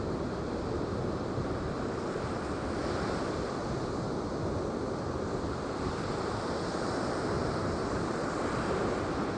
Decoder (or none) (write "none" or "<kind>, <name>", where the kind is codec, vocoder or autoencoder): none